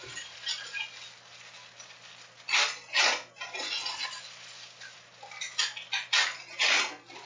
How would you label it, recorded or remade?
recorded